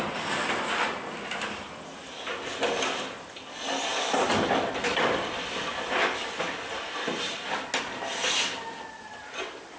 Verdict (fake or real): real